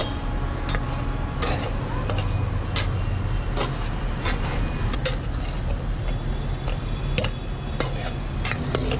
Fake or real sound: real